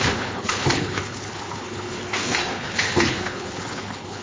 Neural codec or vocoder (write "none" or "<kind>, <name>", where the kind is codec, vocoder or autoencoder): codec, HILCodec